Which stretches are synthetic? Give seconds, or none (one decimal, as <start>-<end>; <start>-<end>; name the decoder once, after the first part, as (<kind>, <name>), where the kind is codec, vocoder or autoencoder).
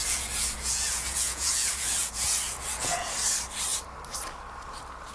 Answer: 0.0-3.1 (vocoder, Vocos)